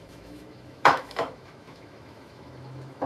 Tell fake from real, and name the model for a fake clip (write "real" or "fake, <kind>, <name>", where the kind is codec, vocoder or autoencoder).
fake, autoencoder, DAC-VAE